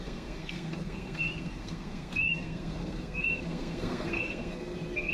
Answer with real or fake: fake